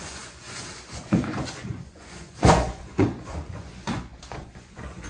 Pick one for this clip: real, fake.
fake